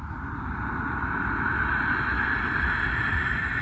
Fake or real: real